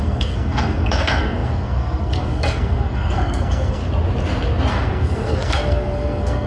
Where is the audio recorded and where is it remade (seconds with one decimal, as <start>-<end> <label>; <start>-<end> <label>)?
0.0-3.8 remade; 3.8-4.7 recorded; 4.7-6.5 remade